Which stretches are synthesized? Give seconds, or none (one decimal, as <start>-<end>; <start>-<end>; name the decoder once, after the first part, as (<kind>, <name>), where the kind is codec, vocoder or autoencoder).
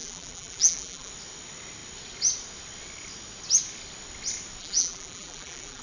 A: 0.0-1.1 (vocoder, BigVGAN v2); 4.6-5.8